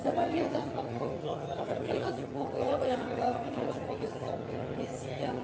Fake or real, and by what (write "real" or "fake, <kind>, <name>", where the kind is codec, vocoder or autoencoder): fake, vocoder, HiFi-GAN